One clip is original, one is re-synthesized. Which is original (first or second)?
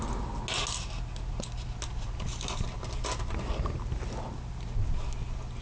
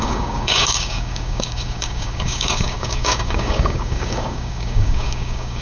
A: first